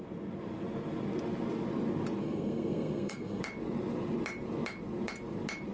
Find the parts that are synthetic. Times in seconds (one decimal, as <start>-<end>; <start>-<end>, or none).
2.2-3.4